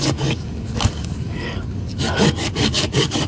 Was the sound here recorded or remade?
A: remade